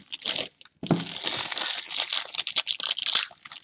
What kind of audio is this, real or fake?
real